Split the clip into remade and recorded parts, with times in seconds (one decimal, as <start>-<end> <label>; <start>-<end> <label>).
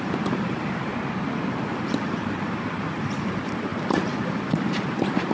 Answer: 0.0-0.9 remade; 0.9-1.5 recorded; 1.5-5.3 remade